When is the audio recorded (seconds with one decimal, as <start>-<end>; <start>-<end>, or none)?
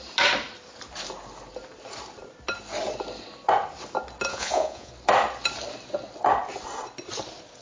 0.0-4.3; 4.9-7.6